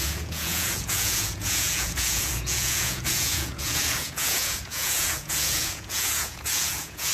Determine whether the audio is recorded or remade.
remade